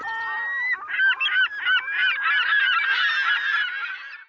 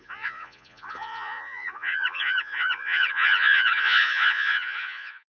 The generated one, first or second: second